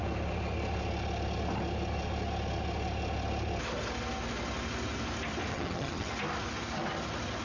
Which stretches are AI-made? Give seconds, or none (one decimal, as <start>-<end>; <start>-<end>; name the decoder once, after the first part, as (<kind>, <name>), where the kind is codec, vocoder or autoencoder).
5.5-6.1 (vocoder, HiFi-GAN)